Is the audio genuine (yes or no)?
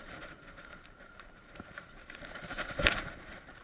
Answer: no